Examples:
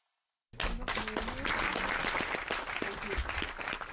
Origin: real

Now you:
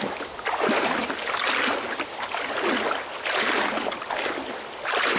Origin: real